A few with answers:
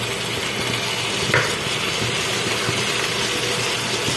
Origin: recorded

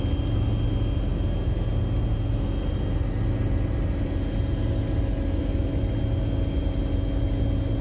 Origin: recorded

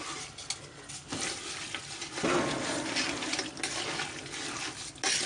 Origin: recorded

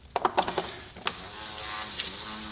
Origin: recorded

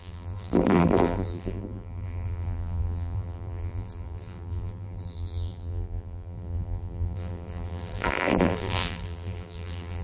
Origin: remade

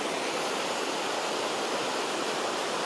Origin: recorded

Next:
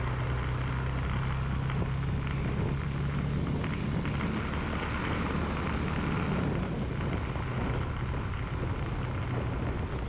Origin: recorded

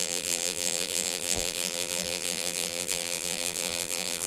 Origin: remade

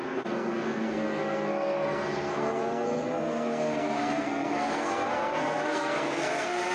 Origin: remade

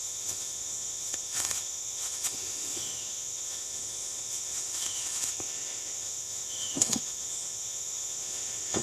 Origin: remade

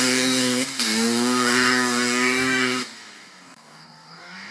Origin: remade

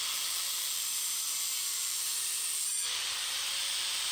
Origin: remade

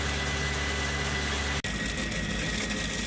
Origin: recorded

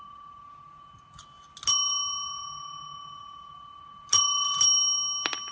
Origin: recorded